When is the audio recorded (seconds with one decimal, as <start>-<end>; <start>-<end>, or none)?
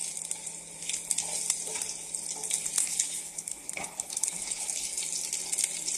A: 0.0-2.8; 5.0-6.0